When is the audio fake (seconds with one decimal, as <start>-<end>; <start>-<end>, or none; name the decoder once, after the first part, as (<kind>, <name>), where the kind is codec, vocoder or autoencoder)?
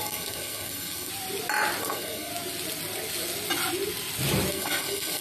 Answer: 0.0-1.1 (codec, SNAC); 1.8-2.3; 4.5-5.2